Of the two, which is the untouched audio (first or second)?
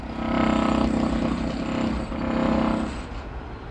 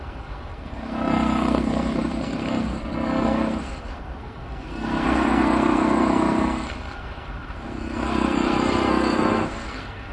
first